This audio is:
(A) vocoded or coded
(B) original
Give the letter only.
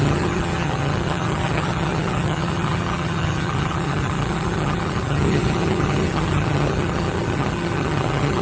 A